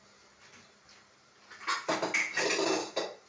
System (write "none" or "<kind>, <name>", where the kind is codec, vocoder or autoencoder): none